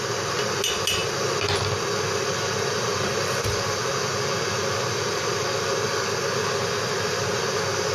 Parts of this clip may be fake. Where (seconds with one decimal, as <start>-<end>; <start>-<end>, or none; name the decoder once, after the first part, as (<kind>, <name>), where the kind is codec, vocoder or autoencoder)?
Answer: none